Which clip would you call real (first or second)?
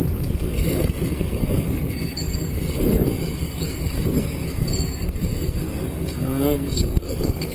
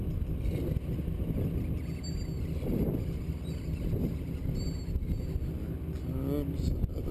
second